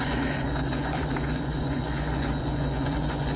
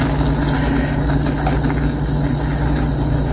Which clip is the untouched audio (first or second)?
second